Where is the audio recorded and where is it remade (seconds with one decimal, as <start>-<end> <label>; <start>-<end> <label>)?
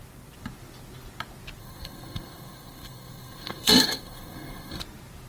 0.0-1.6 recorded; 1.6-4.8 remade; 4.8-5.3 recorded